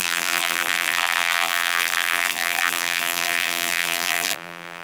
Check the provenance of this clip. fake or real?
fake